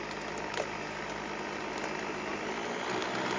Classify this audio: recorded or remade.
recorded